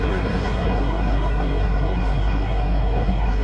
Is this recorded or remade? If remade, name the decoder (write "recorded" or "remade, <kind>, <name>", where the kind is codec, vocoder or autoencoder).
remade, codec, SNAC